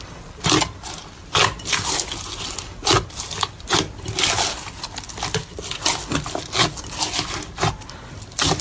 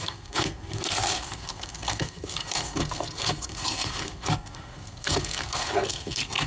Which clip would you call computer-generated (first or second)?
second